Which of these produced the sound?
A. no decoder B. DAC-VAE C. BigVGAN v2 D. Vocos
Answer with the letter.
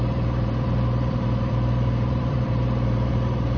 C